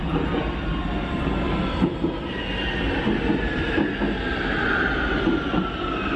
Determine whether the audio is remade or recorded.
recorded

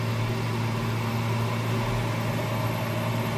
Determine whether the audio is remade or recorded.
recorded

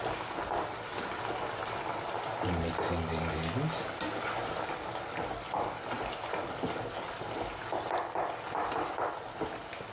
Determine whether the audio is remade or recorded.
recorded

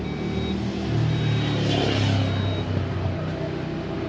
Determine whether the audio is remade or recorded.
recorded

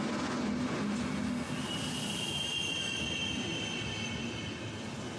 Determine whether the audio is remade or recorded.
recorded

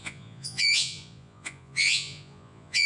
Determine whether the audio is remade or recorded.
remade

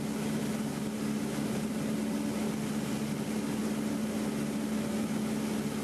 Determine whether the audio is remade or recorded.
recorded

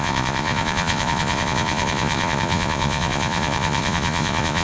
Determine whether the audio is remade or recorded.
remade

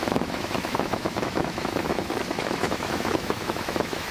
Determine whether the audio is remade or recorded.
remade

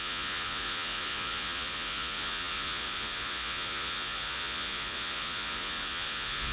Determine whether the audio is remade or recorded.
remade